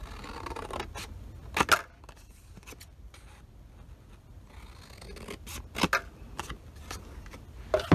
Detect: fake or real real